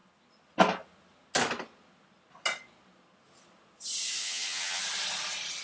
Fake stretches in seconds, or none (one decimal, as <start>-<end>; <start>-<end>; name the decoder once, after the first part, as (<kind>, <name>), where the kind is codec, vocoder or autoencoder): 4.2-4.8 (vocoder, HiFi-GAN)